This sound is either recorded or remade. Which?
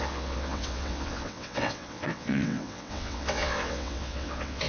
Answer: remade